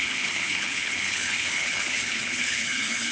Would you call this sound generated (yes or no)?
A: yes